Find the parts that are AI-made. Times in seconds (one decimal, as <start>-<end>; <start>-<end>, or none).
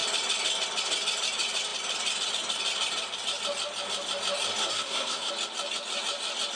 4.6-5.3